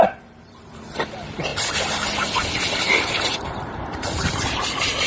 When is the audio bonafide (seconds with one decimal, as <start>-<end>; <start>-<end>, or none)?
none